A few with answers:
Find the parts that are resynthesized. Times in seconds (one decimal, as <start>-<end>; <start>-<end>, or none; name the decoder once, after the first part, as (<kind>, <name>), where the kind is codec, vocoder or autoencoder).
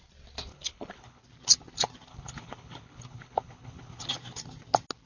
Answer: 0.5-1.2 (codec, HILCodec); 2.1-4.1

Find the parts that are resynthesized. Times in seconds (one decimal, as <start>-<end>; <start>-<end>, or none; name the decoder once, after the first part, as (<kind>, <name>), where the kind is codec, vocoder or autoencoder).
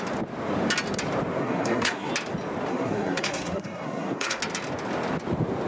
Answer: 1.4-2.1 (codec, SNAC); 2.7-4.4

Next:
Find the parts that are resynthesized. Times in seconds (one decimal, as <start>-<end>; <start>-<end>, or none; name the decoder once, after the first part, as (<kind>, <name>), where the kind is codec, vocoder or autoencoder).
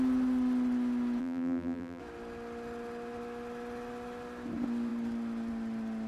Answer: 1.2-2.0 (vocoder, BigVGAN v2)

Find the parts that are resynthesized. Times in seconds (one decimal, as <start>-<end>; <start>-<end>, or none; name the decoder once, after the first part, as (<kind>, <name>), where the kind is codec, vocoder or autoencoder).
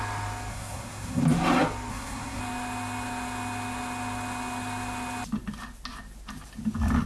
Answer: 0.5-1.2 (codec, SNAC); 1.9-2.4